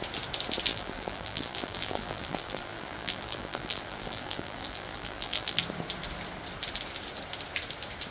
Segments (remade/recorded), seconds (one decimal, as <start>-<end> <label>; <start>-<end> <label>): 0.0-0.7 recorded; 0.7-5.6 remade; 5.6-8.1 recorded

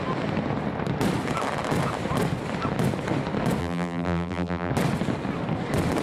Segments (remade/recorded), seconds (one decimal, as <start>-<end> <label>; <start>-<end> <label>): 0.0-3.6 recorded; 3.6-4.7 remade; 4.7-6.0 recorded

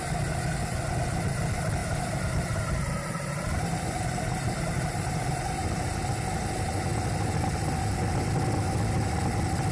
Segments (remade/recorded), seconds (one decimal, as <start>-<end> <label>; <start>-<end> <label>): 0.0-1.8 recorded; 1.8-5.4 remade; 5.4-9.7 recorded

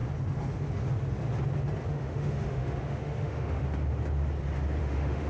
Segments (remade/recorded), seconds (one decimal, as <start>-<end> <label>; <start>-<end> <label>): 0.0-1.9 recorded; 1.9-3.6 remade; 3.6-4.8 recorded; 4.8-5.3 remade

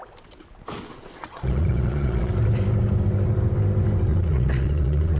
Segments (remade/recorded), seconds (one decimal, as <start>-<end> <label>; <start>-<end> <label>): 0.0-0.9 recorded; 0.9-2.3 remade; 2.3-4.1 recorded; 4.1-5.2 remade